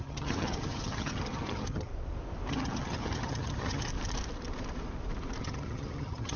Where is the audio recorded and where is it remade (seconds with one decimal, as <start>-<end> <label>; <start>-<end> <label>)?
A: 0.0-1.9 remade; 1.9-2.5 recorded; 2.5-3.9 remade; 3.9-5.4 recorded; 5.4-6.4 remade